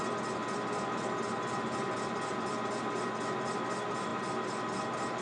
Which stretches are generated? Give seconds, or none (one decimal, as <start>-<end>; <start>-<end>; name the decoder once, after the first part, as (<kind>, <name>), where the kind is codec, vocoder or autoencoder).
none